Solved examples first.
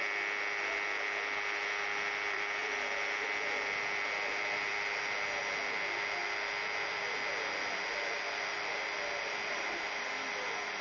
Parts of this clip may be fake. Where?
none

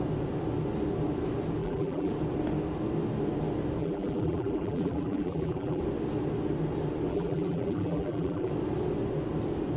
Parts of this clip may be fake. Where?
1.6-2.1 (vocoder, BigVGAN v2); 3.8-5.8; 7.1-8.5